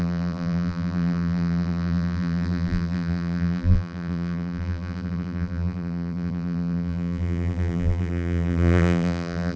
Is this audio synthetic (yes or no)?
yes